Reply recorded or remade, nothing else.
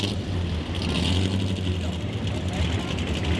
recorded